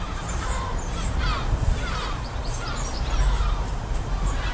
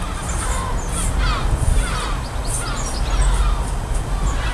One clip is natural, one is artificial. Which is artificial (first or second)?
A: first